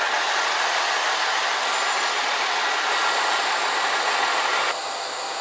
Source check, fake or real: real